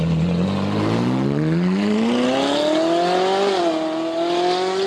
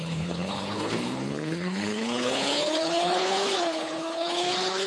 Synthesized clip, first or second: second